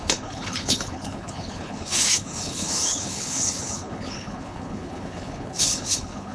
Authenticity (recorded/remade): remade